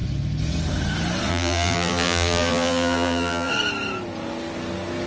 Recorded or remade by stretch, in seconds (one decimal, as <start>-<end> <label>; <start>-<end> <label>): 0.0-1.3 recorded; 1.3-3.5 remade; 3.5-5.1 recorded